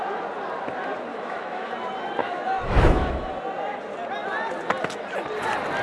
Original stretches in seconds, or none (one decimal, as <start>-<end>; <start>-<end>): 0.0-1.1; 1.7-2.2; 3.2-5.8